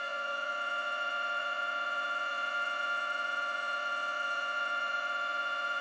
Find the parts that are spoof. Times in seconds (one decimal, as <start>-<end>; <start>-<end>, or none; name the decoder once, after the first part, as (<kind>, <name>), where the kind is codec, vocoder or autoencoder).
0.0-5.8 (vocoder, Vocos)